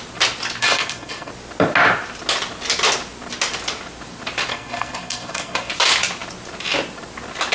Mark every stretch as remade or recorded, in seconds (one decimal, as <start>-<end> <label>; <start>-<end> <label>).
0.0-0.6 recorded; 0.6-1.3 remade; 1.3-4.5 recorded; 4.5-5.7 remade; 5.7-7.5 recorded